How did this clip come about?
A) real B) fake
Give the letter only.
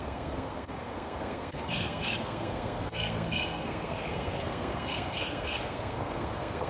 B